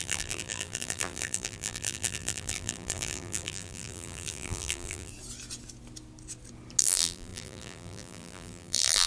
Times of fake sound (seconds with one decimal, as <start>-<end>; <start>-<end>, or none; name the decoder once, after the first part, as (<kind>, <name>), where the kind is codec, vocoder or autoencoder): 0.0-5.1 (vocoder, BigVGAN v2); 6.8-9.1